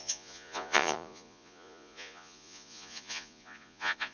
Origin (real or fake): fake